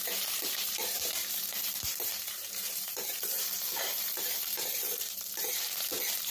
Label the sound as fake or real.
fake